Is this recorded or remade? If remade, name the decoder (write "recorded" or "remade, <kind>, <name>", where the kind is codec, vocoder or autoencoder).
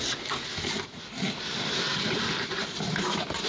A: recorded